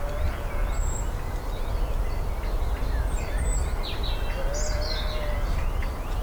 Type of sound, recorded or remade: recorded